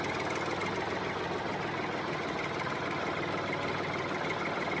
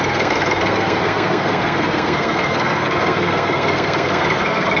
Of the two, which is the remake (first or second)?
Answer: second